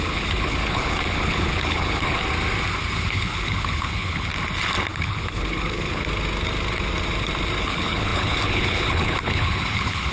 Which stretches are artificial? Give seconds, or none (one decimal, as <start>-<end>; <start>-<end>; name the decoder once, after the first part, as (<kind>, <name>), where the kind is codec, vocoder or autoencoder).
0.0-2.2 (codec, HILCodec); 3.0-4.3; 4.9-6.0; 7.6-10.1